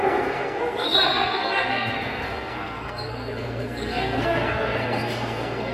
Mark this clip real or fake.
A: fake